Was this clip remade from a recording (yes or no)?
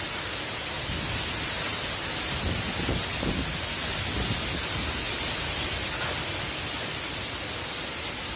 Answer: no